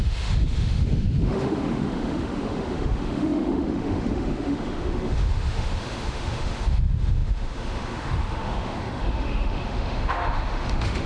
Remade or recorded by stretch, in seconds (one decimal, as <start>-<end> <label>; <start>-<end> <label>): 0.0-11.1 remade